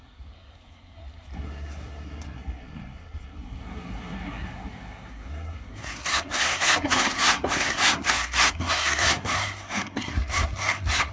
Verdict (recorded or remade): remade